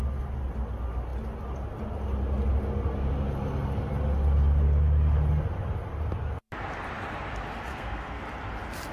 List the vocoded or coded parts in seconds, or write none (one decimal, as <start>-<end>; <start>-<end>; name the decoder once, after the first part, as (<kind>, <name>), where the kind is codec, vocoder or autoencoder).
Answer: 7.7-8.2 (codec, SNAC)